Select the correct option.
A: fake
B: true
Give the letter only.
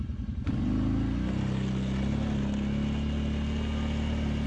B